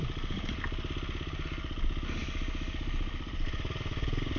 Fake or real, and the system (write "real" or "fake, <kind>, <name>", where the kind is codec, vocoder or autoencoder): real